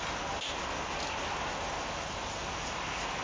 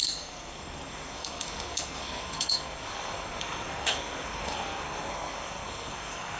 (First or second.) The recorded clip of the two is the first